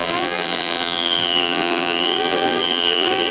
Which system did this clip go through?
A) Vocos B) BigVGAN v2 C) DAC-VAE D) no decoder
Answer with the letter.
B